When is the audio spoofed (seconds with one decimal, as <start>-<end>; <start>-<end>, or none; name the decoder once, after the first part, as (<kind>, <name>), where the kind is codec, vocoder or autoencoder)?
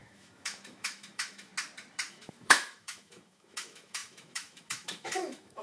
0.0-1.5 (autoencoder, DAC-VAE); 2.1-5.6